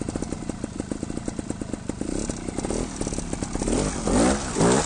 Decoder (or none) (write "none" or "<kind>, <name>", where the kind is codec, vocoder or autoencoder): none